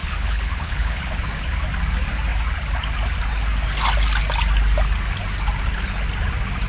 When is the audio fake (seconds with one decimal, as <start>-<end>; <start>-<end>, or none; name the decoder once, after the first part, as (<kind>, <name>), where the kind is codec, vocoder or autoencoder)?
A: 0.0-1.2 (codec, HILCodec)